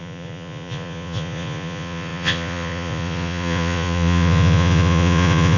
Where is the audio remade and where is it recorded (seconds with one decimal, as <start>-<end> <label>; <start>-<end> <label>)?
0.0-5.6 remade